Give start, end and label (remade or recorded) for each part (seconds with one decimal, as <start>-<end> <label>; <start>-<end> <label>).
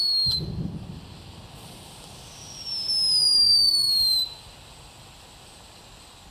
0.0-3.2 recorded; 3.2-3.9 remade; 3.9-6.3 recorded